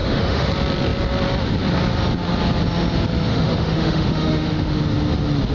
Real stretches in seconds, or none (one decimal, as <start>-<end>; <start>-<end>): 0.5-3.3; 4.8-5.5